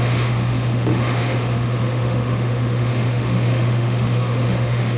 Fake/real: fake